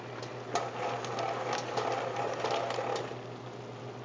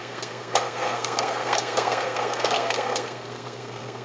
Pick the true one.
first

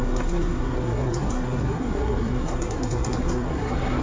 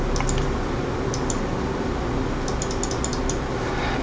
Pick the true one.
second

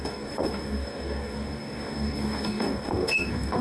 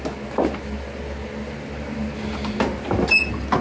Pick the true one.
second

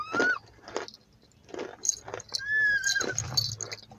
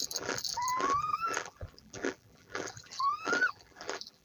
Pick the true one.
first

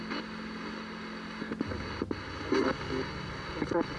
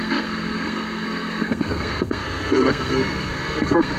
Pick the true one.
first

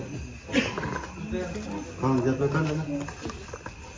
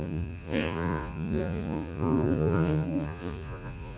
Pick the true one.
first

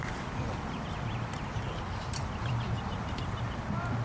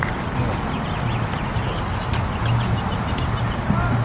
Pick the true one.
second